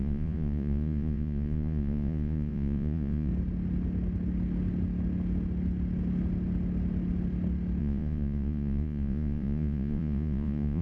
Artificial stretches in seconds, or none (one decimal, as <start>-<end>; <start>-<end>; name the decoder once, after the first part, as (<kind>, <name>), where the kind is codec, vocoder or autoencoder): 0.0-3.3 (vocoder, Vocos); 7.8-10.8